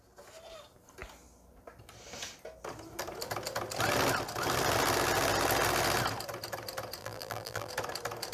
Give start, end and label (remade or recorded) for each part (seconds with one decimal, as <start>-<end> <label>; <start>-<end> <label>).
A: 0.0-7.0 recorded; 7.0-7.7 remade; 7.7-8.3 recorded